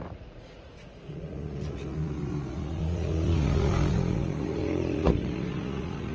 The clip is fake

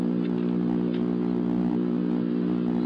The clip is real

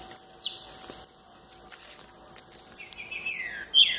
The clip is real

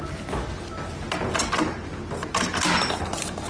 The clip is real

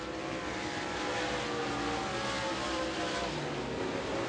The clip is real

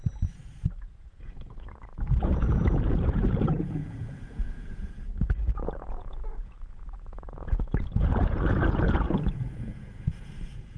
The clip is fake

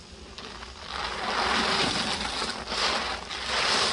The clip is real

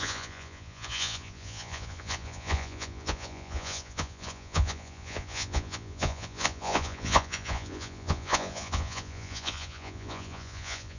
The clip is fake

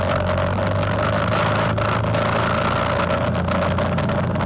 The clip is real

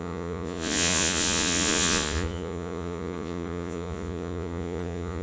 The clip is fake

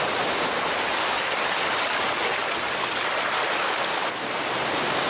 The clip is real